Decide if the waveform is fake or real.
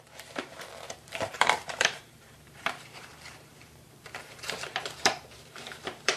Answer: fake